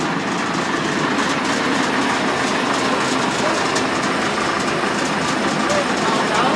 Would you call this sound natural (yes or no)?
yes